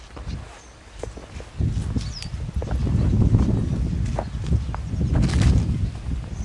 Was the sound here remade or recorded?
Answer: recorded